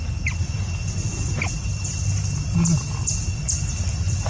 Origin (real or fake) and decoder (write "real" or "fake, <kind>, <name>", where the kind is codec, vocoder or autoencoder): real